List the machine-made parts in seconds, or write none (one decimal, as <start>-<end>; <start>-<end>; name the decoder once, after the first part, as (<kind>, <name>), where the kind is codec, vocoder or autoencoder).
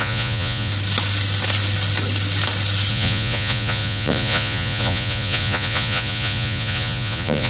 0.0-0.7 (vocoder, Vocos); 2.9-7.5